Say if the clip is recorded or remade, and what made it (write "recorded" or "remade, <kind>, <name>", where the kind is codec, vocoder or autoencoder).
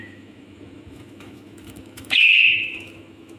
remade, autoencoder, DAC-VAE